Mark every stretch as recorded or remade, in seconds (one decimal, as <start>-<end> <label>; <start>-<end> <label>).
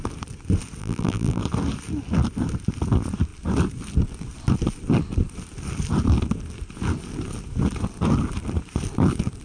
0.0-0.8 recorded; 0.8-1.4 remade; 1.4-9.4 recorded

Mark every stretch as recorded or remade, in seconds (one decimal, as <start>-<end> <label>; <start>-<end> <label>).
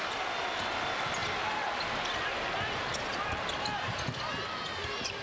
0.0-5.2 recorded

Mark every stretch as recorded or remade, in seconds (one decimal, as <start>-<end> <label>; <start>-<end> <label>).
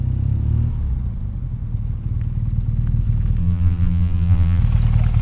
0.0-3.4 recorded; 3.4-4.6 remade; 4.6-5.2 recorded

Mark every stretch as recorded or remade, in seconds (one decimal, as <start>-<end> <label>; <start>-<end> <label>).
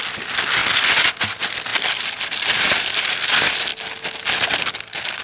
0.0-0.6 remade; 0.6-1.1 recorded; 1.1-1.7 remade; 1.7-2.4 recorded; 2.4-3.7 remade; 3.7-5.2 recorded